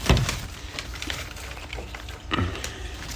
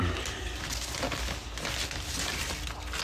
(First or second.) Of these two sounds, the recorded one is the second